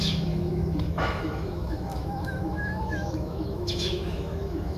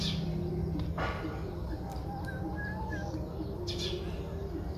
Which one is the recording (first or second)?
second